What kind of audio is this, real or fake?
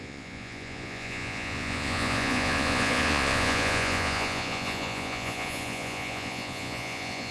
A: fake